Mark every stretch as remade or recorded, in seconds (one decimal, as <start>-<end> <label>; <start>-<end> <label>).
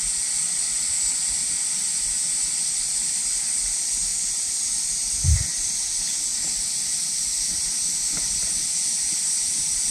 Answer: 0.0-9.9 recorded